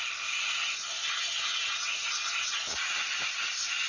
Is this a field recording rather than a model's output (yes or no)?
yes